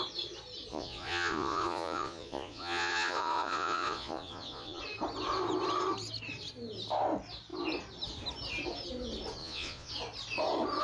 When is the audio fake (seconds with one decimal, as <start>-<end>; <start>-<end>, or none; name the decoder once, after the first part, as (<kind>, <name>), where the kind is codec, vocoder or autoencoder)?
0.7-4.8 (vocoder, Vocos); 9.4-9.9